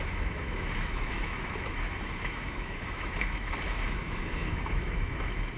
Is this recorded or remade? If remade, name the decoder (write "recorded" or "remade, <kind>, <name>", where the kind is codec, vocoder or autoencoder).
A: remade, autoencoder, DAC-VAE